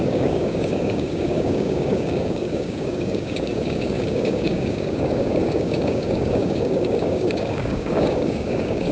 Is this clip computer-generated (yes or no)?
yes